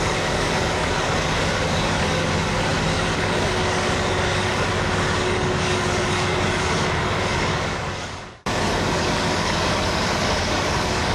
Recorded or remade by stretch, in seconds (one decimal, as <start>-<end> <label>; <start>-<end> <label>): 0.0-11.1 remade